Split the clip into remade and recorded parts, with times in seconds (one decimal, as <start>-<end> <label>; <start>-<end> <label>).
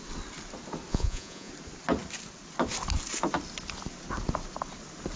0.0-0.9 recorded; 0.9-1.5 remade; 1.5-5.2 recorded